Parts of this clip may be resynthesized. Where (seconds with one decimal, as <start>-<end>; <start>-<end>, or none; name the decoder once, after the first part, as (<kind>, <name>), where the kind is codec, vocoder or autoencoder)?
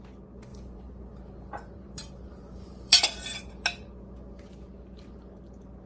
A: 0.5-3.5 (vocoder, BigVGAN v2)